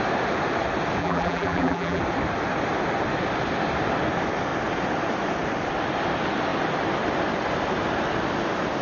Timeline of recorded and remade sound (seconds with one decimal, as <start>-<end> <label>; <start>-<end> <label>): 0.0-1.0 recorded; 1.0-2.0 remade; 2.0-8.8 recorded